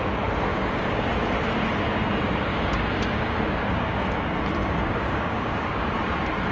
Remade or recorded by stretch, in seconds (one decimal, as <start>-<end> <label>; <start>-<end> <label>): 0.0-0.5 recorded; 0.5-1.1 remade; 1.1-2.5 recorded; 2.5-3.6 remade; 3.6-4.6 recorded; 4.6-5.9 remade; 5.9-6.5 recorded